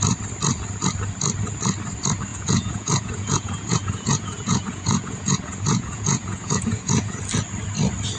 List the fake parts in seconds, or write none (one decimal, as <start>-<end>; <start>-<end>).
2.3-7.2